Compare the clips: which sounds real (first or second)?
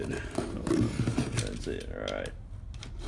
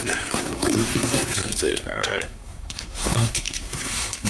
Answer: first